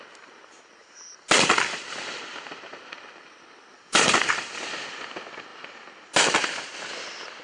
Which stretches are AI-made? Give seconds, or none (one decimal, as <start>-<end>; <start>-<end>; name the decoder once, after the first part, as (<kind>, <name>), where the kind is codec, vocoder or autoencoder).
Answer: 0.8-5.1 (vocoder, BigVGAN v2); 5.5-7.4